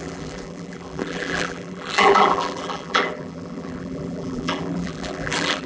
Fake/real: fake